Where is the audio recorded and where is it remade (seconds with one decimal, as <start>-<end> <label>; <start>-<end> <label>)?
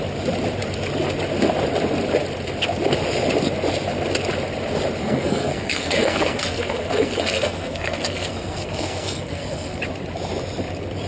0.0-5.0 recorded; 5.0-9.8 remade; 9.8-11.1 recorded